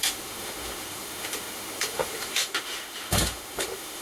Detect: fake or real fake